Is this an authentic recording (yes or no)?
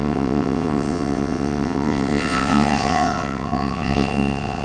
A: no